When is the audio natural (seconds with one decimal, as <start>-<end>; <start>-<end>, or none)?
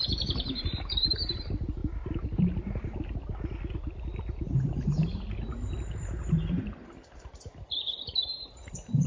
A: 1.8-6.5